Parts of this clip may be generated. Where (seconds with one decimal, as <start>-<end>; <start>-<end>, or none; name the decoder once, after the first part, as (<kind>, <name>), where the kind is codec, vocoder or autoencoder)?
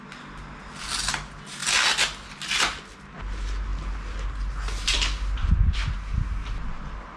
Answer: none